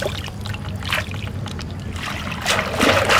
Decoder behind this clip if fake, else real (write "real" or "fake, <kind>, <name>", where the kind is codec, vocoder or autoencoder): real